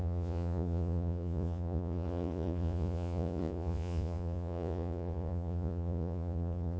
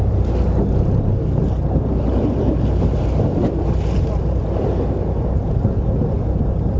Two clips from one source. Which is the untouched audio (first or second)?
second